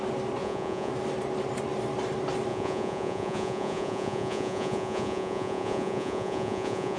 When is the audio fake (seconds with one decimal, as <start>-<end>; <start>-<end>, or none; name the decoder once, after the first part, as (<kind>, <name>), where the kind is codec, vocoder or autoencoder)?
0.4-0.9 (vocoder, Vocos); 2.5-7.0